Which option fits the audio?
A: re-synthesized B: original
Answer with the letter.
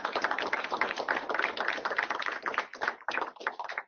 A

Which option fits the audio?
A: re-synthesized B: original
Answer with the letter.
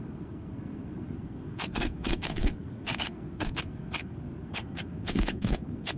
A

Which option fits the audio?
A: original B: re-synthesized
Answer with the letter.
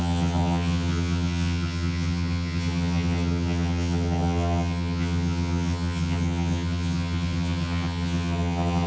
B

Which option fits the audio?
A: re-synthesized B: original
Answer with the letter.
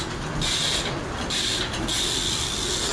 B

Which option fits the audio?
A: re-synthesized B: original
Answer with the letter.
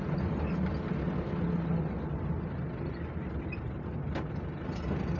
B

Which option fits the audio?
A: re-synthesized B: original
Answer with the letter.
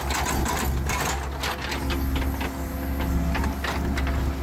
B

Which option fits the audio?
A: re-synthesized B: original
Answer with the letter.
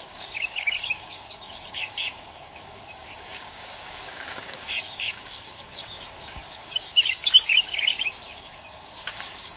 A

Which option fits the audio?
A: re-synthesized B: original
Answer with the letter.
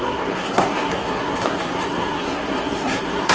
A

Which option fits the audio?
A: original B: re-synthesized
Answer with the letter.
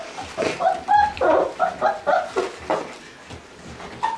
A